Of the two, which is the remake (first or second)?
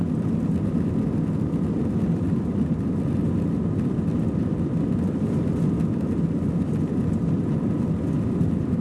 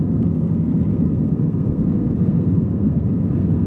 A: second